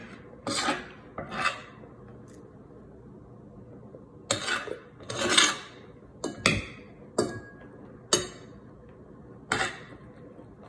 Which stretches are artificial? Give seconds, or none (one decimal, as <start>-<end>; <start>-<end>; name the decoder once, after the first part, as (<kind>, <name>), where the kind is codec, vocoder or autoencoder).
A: none